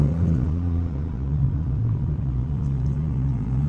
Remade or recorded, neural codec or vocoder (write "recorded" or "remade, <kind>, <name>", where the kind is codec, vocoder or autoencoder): remade, vocoder, Vocos